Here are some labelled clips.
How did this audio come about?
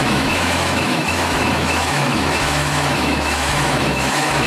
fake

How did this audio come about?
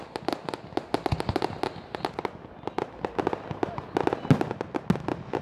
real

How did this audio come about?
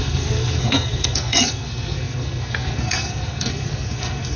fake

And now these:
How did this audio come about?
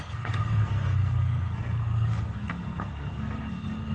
fake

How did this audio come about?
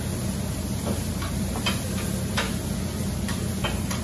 real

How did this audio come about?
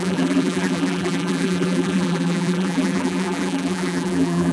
fake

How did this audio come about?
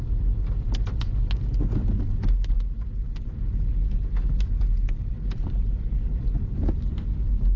real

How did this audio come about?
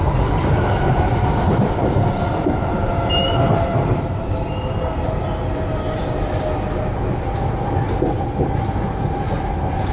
real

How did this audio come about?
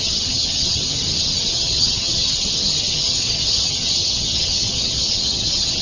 fake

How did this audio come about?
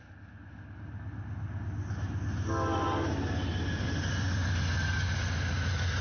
real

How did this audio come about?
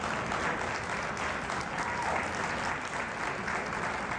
real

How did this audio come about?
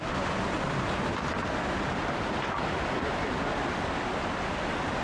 real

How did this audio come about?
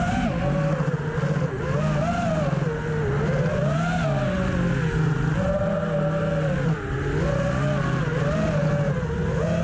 real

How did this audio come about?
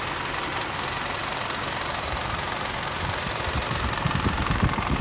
fake